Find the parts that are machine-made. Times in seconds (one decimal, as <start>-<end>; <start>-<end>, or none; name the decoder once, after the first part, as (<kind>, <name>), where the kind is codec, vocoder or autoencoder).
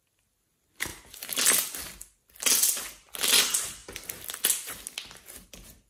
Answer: none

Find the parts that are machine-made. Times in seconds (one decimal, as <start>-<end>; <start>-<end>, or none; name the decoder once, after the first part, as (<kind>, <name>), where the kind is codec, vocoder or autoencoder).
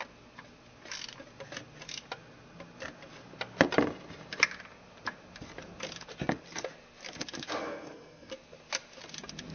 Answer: 7.6-8.3 (codec, SNAC)